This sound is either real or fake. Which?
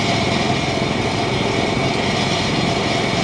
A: real